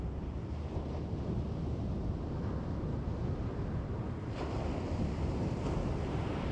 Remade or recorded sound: recorded